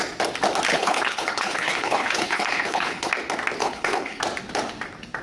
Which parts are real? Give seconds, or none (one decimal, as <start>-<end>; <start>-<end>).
0.0-0.7; 3.1-3.6; 4.2-5.2